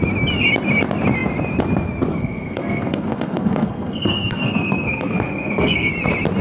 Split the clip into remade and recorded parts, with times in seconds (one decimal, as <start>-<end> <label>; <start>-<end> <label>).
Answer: 0.0-2.1 recorded; 2.1-5.9 remade; 5.9-6.4 recorded

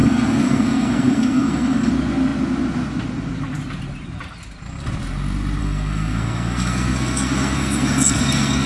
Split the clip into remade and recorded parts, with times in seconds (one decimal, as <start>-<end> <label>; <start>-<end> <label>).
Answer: 0.0-1.9 remade; 1.9-5.6 recorded; 5.6-8.7 remade